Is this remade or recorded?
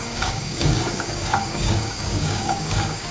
remade